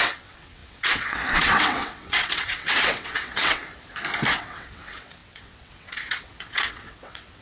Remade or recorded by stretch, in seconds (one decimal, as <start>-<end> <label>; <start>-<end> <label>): 0.0-3.6 remade; 3.6-4.3 recorded; 4.3-7.4 remade